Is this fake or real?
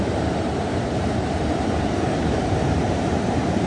fake